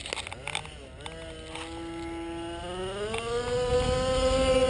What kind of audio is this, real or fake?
real